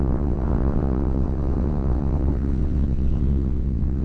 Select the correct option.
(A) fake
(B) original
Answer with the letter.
A